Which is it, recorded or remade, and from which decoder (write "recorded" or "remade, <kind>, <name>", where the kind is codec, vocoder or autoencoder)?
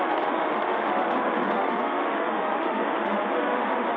remade, autoencoder, DAC-VAE